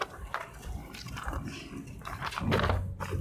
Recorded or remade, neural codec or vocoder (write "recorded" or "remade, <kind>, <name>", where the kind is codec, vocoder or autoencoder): recorded